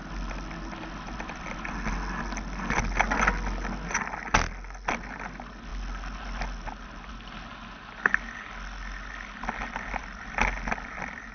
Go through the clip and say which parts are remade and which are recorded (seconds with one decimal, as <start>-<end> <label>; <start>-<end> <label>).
0.0-11.3 recorded

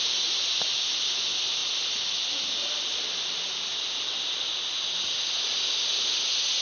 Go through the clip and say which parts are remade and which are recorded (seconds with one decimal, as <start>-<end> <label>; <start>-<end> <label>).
0.0-6.6 recorded